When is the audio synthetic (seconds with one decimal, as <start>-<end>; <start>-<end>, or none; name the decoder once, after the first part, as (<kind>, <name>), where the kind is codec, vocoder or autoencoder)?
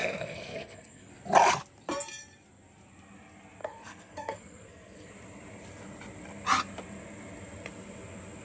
0.0-1.1 (codec, SNAC); 3.6-5.1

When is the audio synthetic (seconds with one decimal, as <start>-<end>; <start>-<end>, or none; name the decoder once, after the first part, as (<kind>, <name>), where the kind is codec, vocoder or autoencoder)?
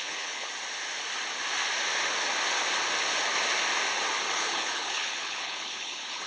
0.0-0.5 (codec, HILCodec); 4.3-6.3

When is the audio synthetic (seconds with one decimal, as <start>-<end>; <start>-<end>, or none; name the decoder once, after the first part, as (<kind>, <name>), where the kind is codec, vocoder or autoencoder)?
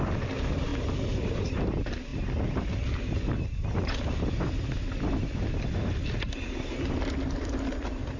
none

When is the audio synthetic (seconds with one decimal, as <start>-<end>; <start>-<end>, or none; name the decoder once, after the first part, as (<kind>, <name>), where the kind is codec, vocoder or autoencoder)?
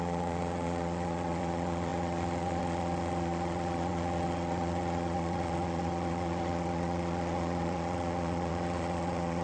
0.0-9.4 (vocoder, Vocos)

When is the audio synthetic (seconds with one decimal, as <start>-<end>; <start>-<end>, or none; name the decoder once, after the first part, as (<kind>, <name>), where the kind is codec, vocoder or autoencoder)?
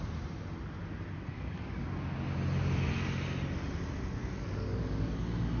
1.3-1.8 (codec, DAC); 4.2-5.6